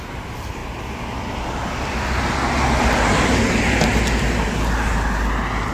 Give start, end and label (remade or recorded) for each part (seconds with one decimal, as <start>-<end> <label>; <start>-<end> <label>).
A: 0.0-5.7 recorded